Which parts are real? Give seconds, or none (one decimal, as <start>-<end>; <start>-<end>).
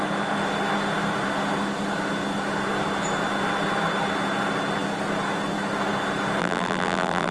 0.0-6.4